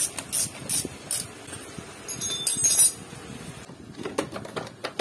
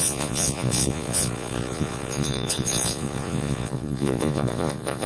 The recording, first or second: first